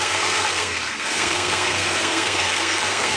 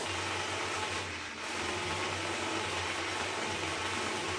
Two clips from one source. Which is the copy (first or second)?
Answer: first